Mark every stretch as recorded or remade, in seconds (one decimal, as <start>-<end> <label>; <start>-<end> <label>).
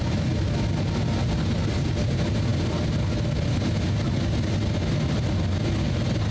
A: 0.0-6.3 recorded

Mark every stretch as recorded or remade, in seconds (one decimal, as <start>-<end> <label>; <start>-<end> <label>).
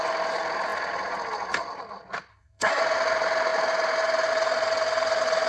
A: 0.0-2.3 recorded; 2.3-2.8 remade; 2.8-5.5 recorded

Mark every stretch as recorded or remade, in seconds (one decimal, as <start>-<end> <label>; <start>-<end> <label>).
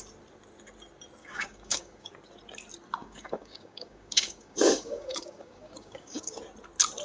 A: 0.0-1.2 recorded; 1.2-2.1 remade; 2.1-3.0 recorded; 3.0-6.4 remade; 6.4-7.0 recorded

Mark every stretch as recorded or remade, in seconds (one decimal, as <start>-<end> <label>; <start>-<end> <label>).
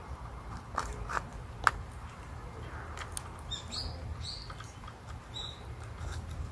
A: 0.0-6.5 recorded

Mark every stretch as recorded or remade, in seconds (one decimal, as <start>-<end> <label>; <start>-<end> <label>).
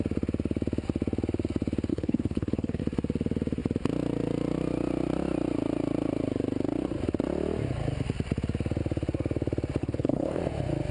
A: 0.0-1.9 recorded; 1.9-2.8 remade; 2.8-9.8 recorded; 9.8-10.4 remade; 10.4-10.9 recorded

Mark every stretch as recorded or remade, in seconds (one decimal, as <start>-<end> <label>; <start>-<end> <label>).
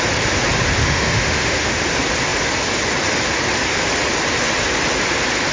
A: 0.0-0.8 recorded; 0.8-1.8 remade; 1.8-5.5 recorded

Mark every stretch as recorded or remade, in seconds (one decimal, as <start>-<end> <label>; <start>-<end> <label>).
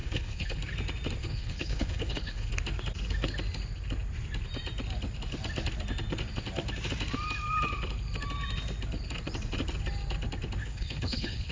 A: 0.0-0.6 remade; 0.6-1.2 recorded; 1.2-2.5 remade; 2.5-10.6 recorded; 10.6-11.5 remade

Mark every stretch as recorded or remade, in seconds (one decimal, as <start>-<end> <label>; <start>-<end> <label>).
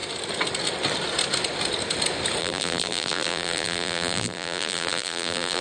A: 0.0-2.4 recorded; 2.4-5.6 remade